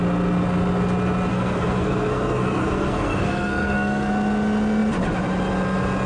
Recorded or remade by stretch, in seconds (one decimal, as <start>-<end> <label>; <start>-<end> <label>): 0.0-1.3 recorded; 1.3-4.1 remade; 4.1-6.1 recorded